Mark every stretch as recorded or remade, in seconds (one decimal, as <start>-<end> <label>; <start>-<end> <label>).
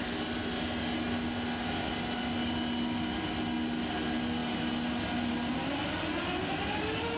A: 0.0-7.2 recorded